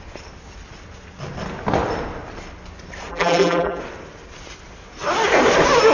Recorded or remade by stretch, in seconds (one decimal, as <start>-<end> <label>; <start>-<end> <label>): 0.0-3.1 recorded; 3.1-3.8 remade; 3.8-5.9 recorded